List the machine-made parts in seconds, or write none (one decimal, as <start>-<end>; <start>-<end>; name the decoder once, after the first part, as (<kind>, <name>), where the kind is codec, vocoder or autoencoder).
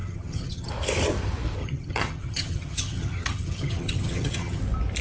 0.0-0.7 (vocoder, HiFi-GAN); 1.6-4.6